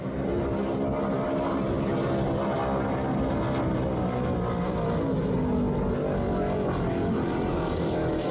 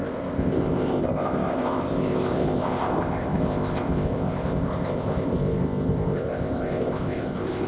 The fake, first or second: second